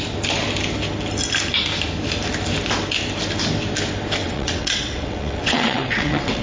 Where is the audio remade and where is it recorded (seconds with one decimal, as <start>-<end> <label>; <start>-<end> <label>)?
0.0-4.2 recorded; 4.2-6.4 remade